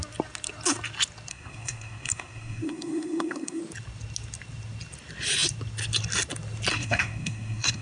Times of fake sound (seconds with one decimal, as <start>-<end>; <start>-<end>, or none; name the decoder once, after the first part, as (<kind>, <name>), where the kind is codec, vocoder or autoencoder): 1.3-3.6 (codec, SNAC); 6.7-7.8